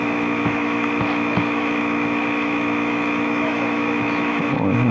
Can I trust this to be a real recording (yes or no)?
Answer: no